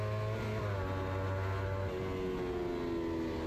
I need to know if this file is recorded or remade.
recorded